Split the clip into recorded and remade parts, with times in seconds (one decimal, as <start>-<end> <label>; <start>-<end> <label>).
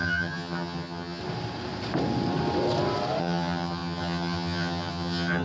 0.0-1.2 remade; 1.2-3.2 recorded; 3.2-5.4 remade